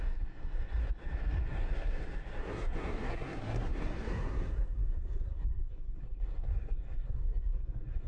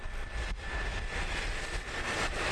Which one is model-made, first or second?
first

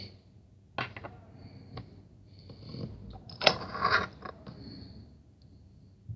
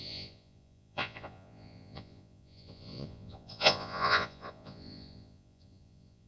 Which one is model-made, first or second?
second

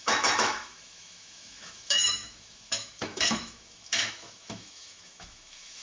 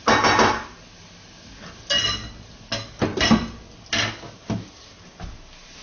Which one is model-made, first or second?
first